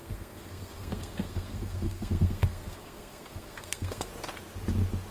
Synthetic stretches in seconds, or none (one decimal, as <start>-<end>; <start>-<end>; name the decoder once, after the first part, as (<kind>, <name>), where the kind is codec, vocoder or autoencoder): 0.0-4.1 (codec, SNAC)